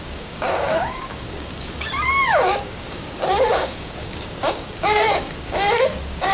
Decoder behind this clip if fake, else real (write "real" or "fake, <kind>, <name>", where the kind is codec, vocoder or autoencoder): fake, codec, DAC